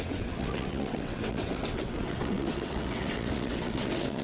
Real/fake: fake